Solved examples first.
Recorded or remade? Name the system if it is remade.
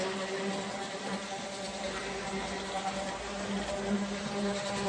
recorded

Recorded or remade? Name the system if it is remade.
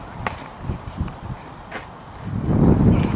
recorded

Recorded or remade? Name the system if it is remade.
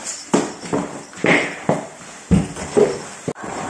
recorded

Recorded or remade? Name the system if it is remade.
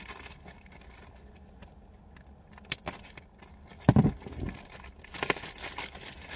recorded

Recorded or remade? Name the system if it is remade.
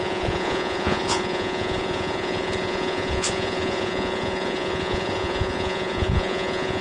remade, vocoder, Vocos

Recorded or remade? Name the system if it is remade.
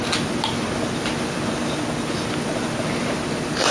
recorded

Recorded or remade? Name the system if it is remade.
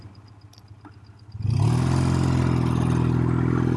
recorded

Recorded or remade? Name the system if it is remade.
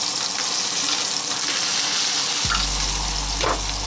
recorded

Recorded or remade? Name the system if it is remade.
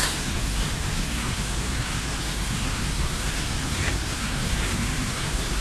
remade, codec, SNAC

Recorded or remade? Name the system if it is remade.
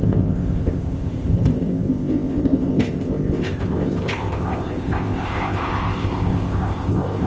remade, codec, ZipCodec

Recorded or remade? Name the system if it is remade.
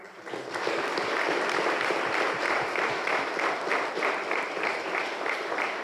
recorded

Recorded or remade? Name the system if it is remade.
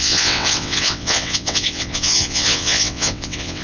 remade, vocoder, WaveNeXt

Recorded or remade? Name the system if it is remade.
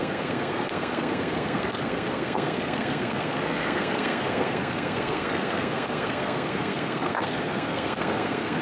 remade, codec, SNAC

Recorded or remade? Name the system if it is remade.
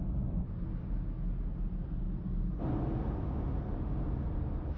recorded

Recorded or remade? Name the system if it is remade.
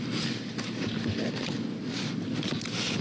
recorded